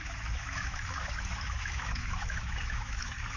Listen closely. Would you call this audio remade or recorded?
remade